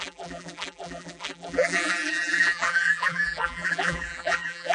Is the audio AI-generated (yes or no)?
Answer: yes